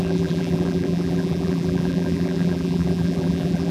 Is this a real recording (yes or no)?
no